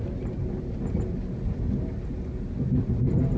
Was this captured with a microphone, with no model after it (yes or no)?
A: yes